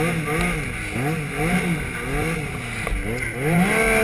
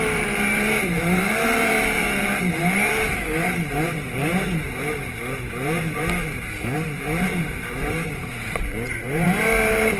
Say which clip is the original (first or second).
first